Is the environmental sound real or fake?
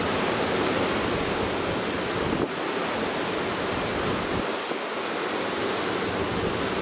real